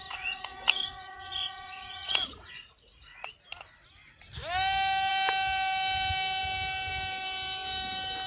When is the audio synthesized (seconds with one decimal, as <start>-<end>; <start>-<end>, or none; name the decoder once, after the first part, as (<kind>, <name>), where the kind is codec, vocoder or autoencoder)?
0.0-3.3 (vocoder, Vocos)